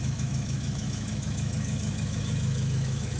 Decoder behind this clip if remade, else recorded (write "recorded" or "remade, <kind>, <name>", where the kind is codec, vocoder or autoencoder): remade, autoencoder, DAC-VAE